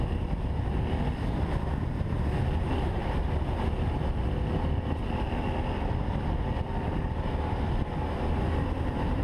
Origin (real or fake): real